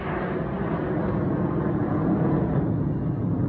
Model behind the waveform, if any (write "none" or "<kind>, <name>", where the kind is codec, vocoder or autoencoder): none